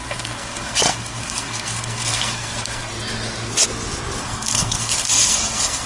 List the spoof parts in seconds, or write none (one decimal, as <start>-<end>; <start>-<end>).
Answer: 0.0-2.9; 4.2-5.9